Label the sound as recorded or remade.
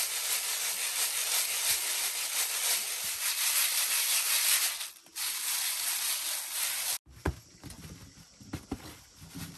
recorded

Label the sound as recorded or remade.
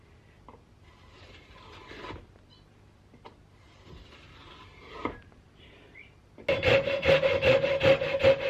recorded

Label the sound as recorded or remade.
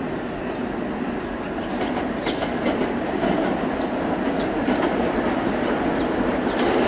recorded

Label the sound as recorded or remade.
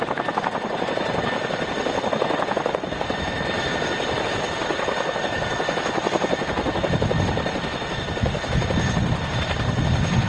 recorded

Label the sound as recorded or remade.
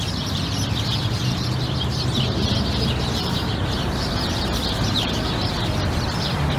remade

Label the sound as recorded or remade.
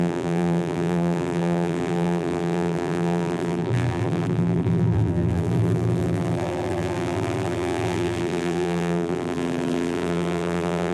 remade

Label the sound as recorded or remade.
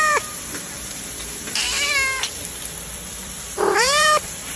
remade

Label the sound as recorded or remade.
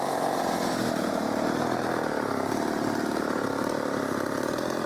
remade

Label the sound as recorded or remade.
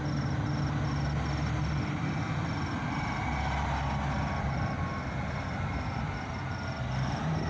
recorded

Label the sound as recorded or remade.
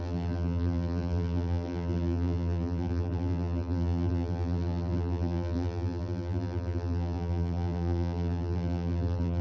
remade